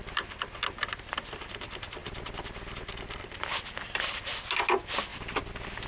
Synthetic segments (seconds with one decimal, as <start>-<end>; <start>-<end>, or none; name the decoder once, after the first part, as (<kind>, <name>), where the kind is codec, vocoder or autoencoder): none